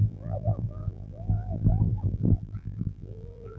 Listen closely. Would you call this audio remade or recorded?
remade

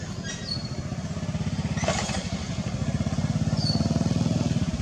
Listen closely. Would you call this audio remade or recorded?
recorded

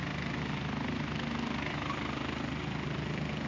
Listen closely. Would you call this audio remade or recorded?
recorded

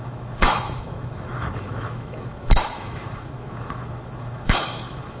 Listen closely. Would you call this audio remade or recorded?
remade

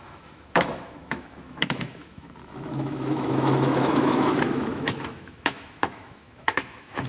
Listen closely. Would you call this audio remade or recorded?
remade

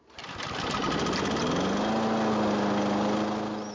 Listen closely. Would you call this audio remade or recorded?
recorded